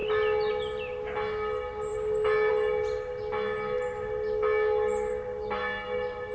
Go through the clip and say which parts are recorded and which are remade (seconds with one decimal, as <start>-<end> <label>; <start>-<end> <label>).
0.0-6.3 recorded